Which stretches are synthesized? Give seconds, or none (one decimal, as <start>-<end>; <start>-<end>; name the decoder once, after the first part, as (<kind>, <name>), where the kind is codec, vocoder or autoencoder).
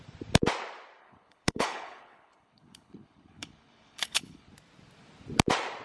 1.0-4.5 (codec, HILCodec)